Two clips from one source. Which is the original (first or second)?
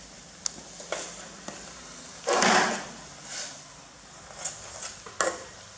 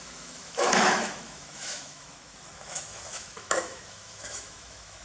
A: first